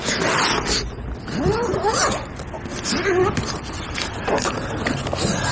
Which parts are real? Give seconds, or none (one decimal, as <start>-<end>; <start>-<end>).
0.0-5.5